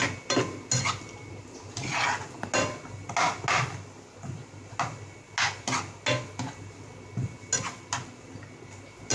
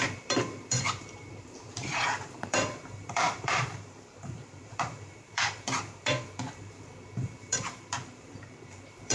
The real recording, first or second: first